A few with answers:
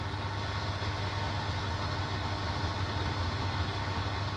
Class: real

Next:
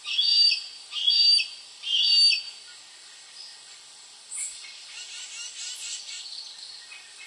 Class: real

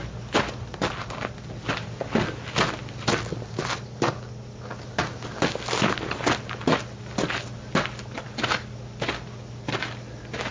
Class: real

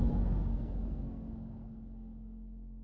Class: fake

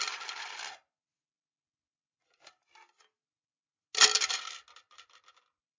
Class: real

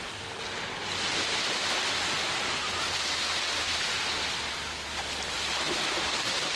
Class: real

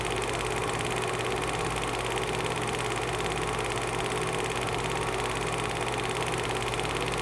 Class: real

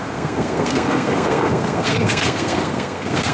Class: fake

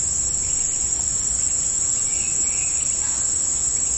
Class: real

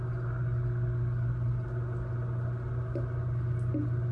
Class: real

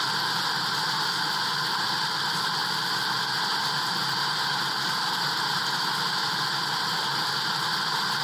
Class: real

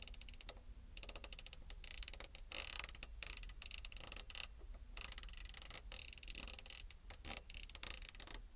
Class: real